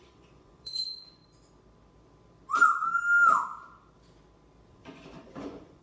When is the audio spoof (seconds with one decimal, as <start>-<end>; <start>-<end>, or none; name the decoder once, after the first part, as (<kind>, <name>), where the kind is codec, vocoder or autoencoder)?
0.0-1.2 (vocoder, Vocos); 4.7-5.8